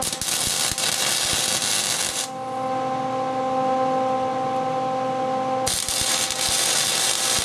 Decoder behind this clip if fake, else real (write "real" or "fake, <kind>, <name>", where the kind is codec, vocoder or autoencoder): real